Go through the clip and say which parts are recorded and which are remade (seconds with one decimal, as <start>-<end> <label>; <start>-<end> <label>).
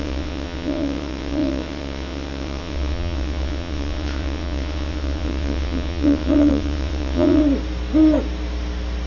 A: 0.0-7.4 remade; 7.4-9.1 recorded